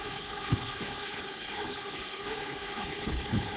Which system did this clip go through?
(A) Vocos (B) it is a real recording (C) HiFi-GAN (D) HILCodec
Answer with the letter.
D